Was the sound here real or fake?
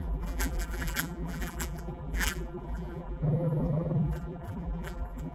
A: fake